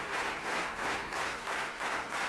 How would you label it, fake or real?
fake